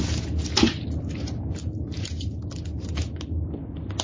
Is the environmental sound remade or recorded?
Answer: recorded